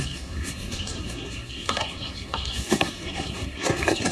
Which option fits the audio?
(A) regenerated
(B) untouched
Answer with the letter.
A